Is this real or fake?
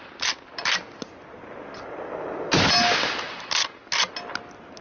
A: real